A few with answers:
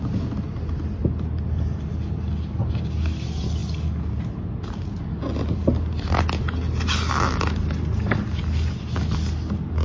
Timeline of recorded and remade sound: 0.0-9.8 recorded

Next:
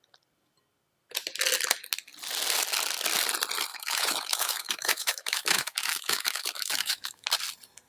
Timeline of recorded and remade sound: 0.0-3.7 recorded; 3.7-7.3 remade; 7.3-7.9 recorded

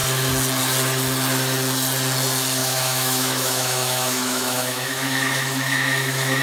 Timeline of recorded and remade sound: 0.0-2.6 recorded; 2.6-6.4 remade